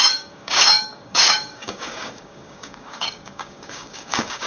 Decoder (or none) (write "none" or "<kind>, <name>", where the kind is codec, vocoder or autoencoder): codec, DAC